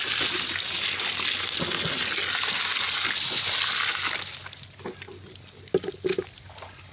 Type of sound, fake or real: real